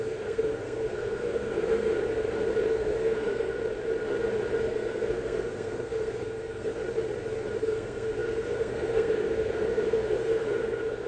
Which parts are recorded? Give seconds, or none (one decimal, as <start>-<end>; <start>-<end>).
1.9-2.7; 3.6-4.6; 6.8-7.6